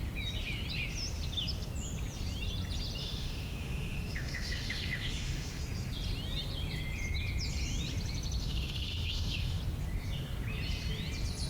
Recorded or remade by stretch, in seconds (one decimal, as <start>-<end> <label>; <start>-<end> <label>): 0.0-3.0 recorded; 3.0-5.6 remade; 5.6-8.4 recorded; 8.4-9.6 remade; 9.6-11.5 recorded